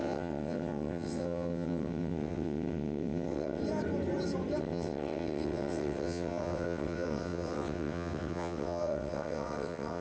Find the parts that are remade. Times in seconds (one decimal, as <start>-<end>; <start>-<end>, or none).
0.0-3.6; 4.6-10.0